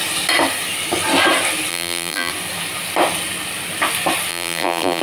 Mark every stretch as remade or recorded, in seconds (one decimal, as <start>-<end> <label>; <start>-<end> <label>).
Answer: 0.0-1.7 recorded; 1.7-2.3 remade; 2.3-4.3 recorded; 4.3-5.0 remade